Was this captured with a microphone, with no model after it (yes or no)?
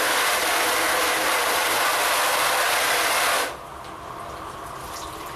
yes